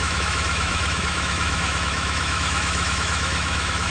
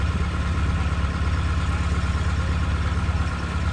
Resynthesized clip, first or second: first